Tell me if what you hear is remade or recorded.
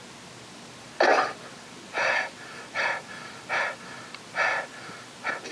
recorded